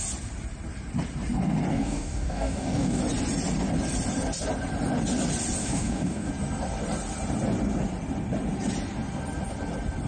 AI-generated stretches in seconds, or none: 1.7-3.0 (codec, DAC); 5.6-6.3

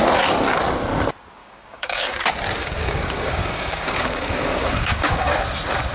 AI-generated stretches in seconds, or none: 1.4-2.2 (codec, DAC); 2.6-5.3